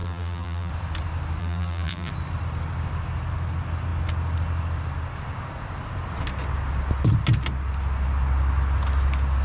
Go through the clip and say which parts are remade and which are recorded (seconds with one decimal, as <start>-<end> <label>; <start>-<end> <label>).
0.0-0.7 remade; 0.7-1.4 recorded; 1.4-2.1 remade; 2.1-9.4 recorded